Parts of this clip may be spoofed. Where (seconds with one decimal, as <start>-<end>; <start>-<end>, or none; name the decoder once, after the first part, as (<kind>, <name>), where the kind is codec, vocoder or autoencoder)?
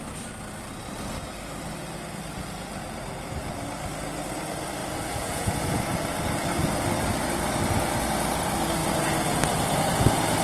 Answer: 4.8-5.8 (vocoder, Vocos)